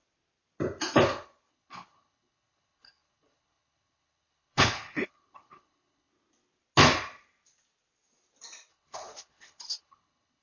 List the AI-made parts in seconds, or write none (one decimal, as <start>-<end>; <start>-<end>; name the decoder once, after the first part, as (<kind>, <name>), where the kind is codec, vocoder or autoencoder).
1.5-6.1 (codec, HILCodec); 8.7-10.4